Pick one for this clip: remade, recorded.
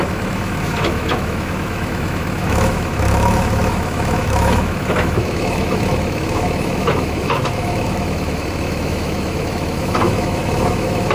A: remade